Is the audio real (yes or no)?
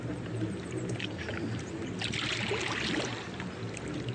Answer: yes